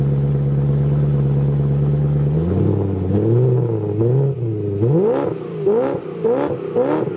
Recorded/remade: recorded